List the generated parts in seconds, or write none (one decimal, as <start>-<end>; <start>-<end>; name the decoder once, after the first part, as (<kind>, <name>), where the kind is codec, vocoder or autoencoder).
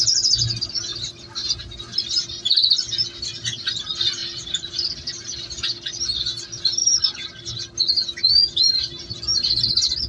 none